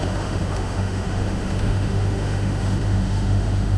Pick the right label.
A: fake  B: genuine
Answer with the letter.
A